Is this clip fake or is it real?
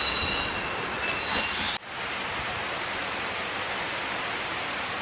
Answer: real